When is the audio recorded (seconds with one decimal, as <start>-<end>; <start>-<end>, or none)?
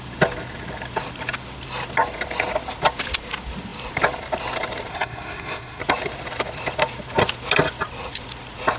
0.0-4.9; 5.8-8.8